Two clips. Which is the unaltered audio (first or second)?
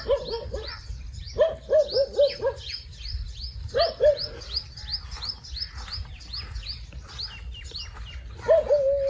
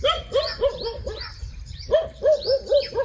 first